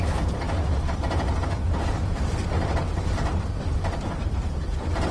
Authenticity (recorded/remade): recorded